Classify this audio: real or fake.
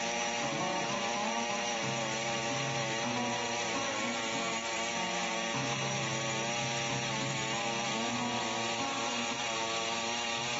real